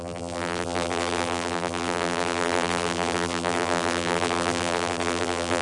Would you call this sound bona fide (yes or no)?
no